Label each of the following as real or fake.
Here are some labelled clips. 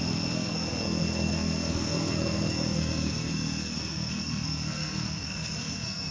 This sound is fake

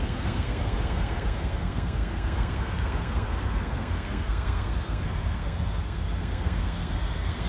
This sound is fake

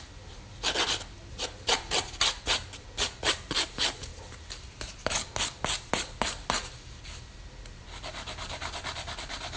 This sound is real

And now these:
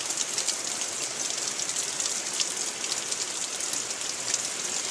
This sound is real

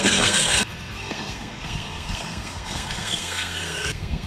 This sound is fake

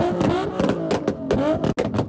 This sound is real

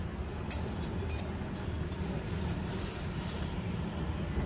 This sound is real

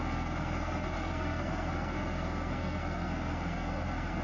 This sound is fake